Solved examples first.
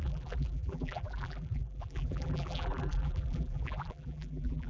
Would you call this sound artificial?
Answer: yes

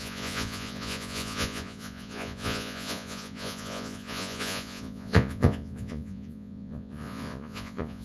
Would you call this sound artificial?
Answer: yes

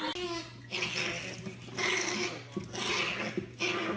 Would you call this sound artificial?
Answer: no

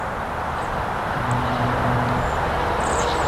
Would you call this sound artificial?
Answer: no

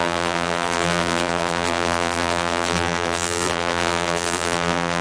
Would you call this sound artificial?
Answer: yes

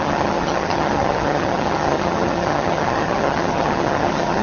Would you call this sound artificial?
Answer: yes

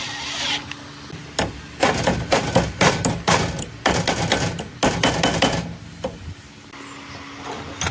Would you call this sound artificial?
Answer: no